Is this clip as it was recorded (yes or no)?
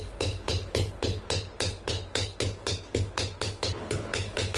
no